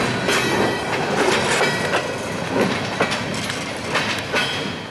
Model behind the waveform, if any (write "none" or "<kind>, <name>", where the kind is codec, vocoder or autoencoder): none